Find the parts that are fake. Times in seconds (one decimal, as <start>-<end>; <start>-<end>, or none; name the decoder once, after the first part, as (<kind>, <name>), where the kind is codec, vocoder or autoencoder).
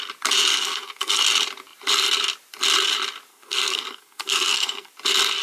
0.5-1.2 (codec, SNAC); 3.3-4.9